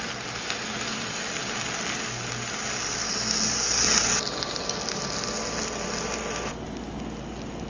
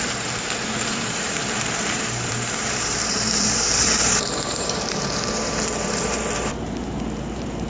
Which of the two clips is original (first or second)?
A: first